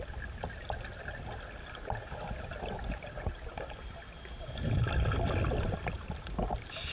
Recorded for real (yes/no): yes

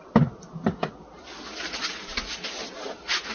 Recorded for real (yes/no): yes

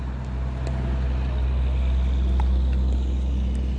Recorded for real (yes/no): yes